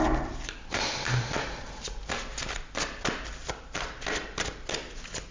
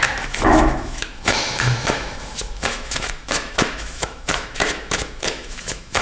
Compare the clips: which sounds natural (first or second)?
first